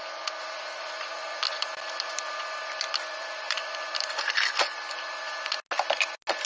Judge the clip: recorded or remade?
recorded